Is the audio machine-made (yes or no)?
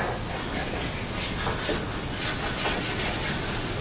no